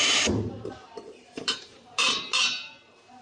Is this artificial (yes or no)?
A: yes